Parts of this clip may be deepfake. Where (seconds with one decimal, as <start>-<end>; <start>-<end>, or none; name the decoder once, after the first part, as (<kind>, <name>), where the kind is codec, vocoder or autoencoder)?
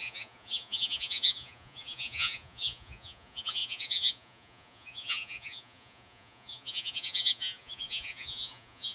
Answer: 0.0-8.9 (vocoder, Vocos)